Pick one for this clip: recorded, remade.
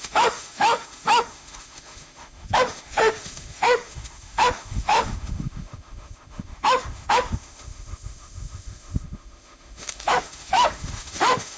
remade